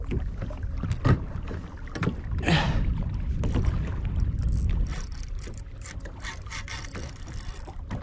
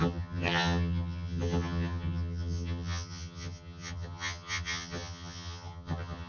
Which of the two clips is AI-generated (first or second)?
second